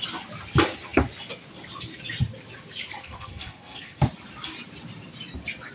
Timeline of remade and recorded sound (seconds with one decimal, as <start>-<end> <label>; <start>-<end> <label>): 0.0-3.0 recorded; 3.0-4.0 remade; 4.0-5.7 recorded